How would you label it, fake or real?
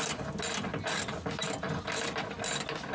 real